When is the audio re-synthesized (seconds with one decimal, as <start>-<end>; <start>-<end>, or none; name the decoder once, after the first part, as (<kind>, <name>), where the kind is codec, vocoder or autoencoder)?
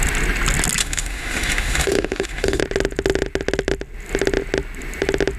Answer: 0.8-2.6 (autoencoder, DAC-VAE)